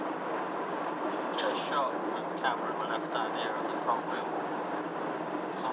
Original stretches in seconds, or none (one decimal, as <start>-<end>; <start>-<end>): 1.7-4.0